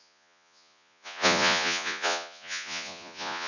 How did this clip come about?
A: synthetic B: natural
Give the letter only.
A